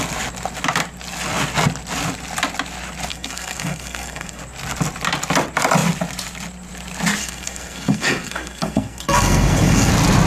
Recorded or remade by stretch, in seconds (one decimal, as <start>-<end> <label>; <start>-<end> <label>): 0.0-3.1 recorded; 3.1-4.4 remade; 4.4-7.2 recorded; 7.2-9.9 remade; 9.9-10.3 recorded